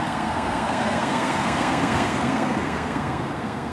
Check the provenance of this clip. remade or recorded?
remade